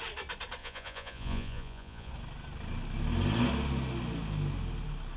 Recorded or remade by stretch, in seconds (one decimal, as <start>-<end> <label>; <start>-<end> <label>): 0.0-0.6 recorded; 0.6-2.1 remade; 2.1-5.2 recorded